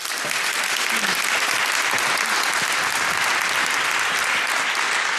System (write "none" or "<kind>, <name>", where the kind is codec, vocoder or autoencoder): none